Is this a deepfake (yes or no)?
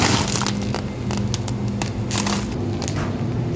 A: no